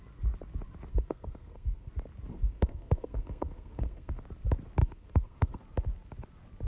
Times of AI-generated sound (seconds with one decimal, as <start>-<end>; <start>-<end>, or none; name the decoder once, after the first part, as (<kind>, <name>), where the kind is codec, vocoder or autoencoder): 0.9-1.9 (codec, SNAC); 2.3-4.1; 4.8-5.6